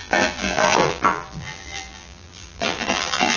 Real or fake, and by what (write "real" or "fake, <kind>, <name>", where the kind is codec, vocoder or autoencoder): fake, vocoder, BigVGAN v2